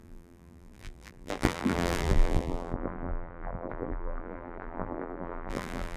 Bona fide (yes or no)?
no